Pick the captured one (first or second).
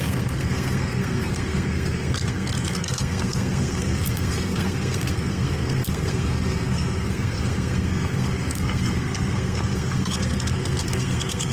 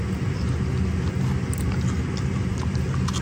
second